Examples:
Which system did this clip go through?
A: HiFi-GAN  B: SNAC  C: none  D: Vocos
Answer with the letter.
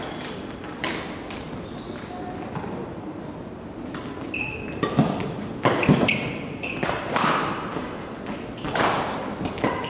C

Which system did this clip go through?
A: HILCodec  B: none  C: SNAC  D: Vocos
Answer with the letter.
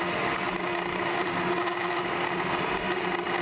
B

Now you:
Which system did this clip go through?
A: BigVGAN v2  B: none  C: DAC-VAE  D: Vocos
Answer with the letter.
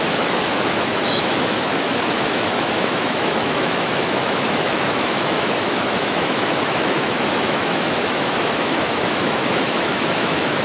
C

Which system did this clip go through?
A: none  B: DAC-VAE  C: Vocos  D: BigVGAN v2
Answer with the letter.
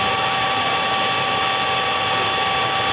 A